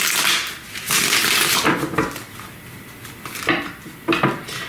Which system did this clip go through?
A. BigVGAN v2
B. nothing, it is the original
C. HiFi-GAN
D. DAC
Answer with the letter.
B